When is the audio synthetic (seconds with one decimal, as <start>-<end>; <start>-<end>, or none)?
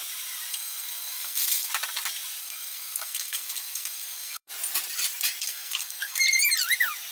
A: 0.5-1.7; 2.4-4.5; 5.4-6.2